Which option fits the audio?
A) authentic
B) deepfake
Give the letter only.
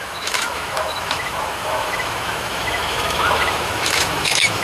B